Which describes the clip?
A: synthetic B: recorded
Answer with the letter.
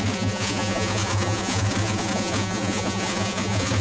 A